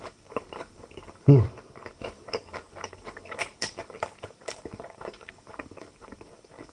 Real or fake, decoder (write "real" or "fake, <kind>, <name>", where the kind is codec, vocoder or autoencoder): fake, codec, DAC